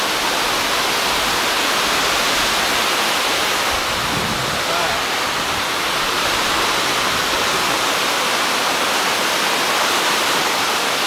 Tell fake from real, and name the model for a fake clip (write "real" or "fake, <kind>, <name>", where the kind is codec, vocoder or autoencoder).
real